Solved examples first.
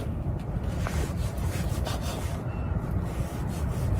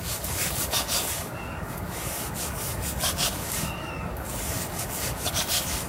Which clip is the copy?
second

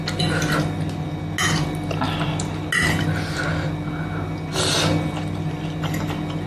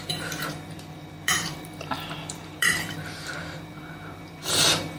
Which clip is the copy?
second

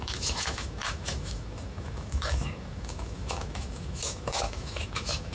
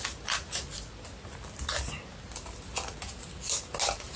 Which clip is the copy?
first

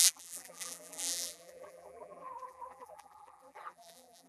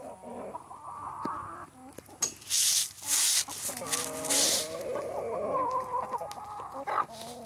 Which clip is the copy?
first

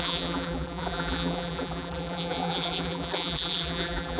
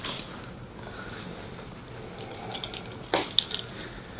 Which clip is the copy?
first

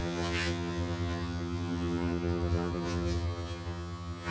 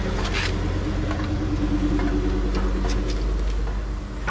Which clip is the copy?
first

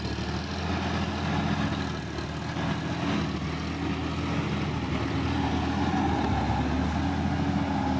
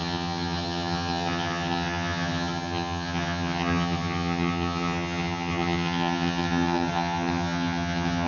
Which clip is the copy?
second